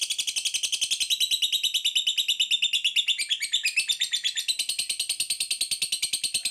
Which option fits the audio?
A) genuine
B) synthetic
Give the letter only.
A